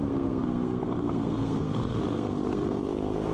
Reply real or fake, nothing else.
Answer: fake